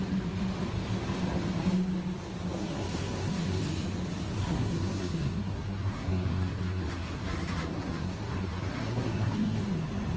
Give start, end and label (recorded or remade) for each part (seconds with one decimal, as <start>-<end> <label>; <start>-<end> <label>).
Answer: 0.0-2.6 recorded; 2.6-3.6 remade; 3.6-4.4 recorded; 4.4-9.6 remade; 9.6-10.2 recorded